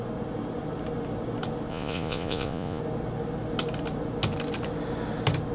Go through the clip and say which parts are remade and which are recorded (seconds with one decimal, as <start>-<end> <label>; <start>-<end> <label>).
0.0-1.7 recorded; 1.7-2.8 remade; 2.8-5.5 recorded